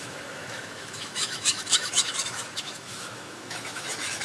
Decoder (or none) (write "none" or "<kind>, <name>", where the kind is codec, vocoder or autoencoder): autoencoder, DAC-VAE